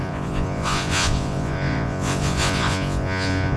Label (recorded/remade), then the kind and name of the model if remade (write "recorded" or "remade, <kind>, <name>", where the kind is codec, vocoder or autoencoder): remade, vocoder, Vocos